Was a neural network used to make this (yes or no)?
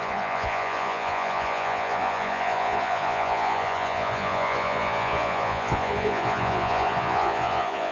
yes